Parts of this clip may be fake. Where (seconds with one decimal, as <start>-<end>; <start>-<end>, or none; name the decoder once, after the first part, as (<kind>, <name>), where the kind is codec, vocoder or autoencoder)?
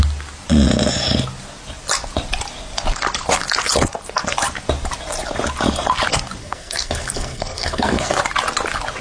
6.4-8.2 (codec, SNAC)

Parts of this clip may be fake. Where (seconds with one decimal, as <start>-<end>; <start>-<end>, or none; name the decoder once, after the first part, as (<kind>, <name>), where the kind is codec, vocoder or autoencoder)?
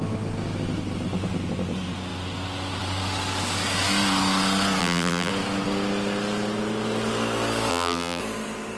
4.8-5.3 (vocoder, BigVGAN v2); 7.7-8.2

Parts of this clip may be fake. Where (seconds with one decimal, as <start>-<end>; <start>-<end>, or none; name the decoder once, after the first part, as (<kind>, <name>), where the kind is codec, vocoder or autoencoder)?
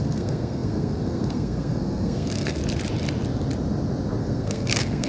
0.0-2.6 (codec, SNAC); 4.2-5.1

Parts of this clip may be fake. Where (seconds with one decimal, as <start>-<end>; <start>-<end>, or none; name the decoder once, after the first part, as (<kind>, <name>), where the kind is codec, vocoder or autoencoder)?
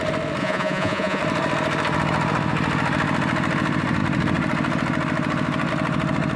0.4-1.2 (vocoder, Vocos)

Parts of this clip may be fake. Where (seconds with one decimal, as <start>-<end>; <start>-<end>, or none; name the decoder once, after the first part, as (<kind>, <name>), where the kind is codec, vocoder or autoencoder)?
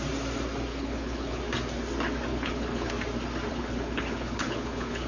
0.7-1.4 (codec, HILCodec); 2.3-2.9; 3.5-5.1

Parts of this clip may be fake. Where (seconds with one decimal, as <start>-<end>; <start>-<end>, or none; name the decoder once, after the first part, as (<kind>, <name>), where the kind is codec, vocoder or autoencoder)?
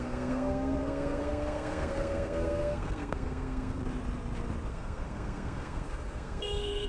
0.0-3.8 (codec, SNAC); 4.7-6.9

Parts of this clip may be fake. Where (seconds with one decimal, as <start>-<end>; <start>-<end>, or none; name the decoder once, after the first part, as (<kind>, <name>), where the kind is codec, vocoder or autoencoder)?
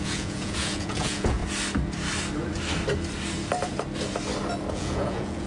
0.0-1.4 (vocoder, Vocos); 4.7-5.5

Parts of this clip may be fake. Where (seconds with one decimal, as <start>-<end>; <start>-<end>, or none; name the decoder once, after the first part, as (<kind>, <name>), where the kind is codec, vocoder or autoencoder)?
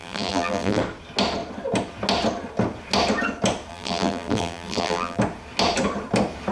0.0-0.8 (vocoder, BigVGAN v2); 3.7-5.2